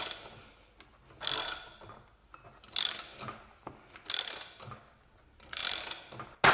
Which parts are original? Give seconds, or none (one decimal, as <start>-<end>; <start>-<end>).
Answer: 0.0-6.5